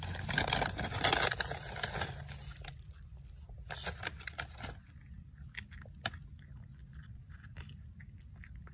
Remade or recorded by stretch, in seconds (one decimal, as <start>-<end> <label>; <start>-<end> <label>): 0.0-6.7 recorded; 6.7-7.2 remade; 7.2-8.7 recorded